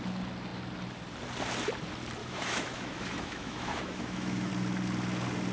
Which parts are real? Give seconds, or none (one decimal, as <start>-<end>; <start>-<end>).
0.0-2.2; 4.5-5.5